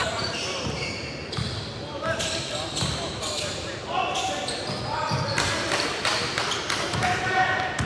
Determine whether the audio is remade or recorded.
recorded